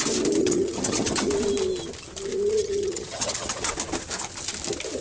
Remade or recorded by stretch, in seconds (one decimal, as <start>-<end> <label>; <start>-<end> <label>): 0.0-0.4 recorded; 0.4-1.3 remade; 1.3-2.6 recorded; 2.6-3.7 remade; 3.7-5.0 recorded